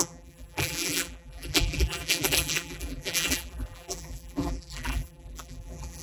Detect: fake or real fake